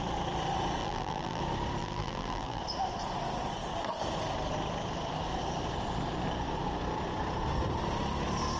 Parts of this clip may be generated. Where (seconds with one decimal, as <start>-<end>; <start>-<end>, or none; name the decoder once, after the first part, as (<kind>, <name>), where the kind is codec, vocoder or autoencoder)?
0.8-1.4 (vocoder, BigVGAN v2); 1.8-2.6